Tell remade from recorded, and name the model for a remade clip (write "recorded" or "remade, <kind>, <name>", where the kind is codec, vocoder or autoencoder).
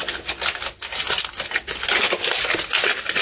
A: recorded